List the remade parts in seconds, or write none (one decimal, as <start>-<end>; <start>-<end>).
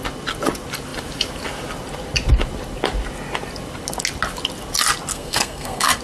5.1-6.0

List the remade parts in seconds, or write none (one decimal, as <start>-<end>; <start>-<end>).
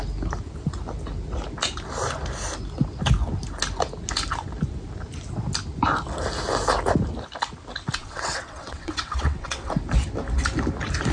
8.0-9.7